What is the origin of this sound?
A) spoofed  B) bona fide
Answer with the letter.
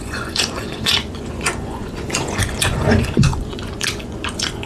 A